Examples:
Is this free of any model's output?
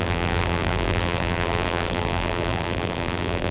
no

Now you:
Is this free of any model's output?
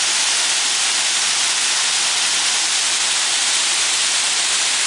yes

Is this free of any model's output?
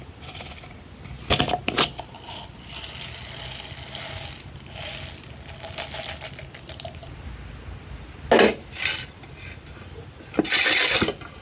yes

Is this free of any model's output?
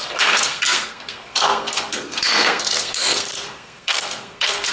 no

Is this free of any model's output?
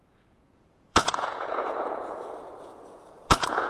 no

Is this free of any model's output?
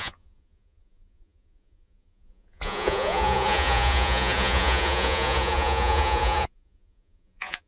no